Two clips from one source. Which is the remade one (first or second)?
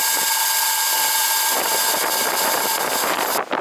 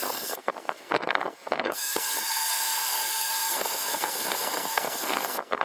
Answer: second